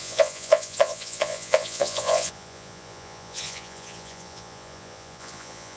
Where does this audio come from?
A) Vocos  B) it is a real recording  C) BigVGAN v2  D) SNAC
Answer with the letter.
A